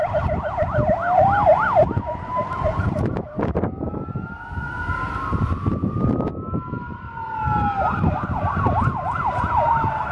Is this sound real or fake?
real